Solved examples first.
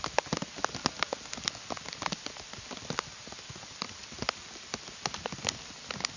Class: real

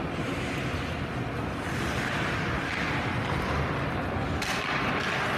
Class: real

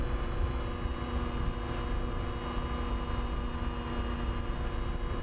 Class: real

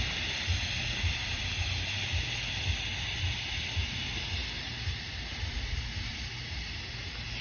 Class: real